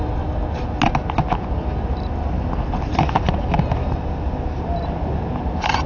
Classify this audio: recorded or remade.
recorded